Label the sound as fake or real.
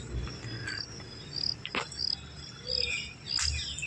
real